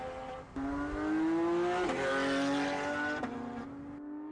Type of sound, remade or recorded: recorded